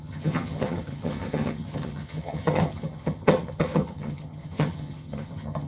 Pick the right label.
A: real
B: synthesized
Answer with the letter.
B